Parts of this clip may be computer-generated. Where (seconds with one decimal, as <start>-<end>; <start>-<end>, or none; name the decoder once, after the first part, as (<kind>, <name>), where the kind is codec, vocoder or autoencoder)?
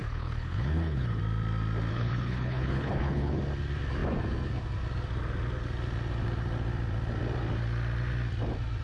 0.0-1.2 (codec, HILCodec); 1.9-3.4